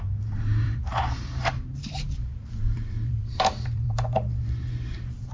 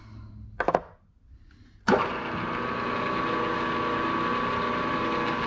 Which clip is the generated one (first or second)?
first